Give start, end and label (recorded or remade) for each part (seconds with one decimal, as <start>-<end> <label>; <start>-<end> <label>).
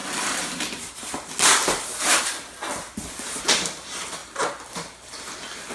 0.0-3.4 recorded; 3.4-5.7 remade